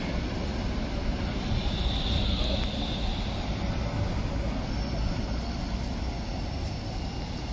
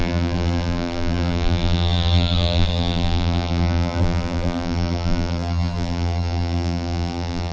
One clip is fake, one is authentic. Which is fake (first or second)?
second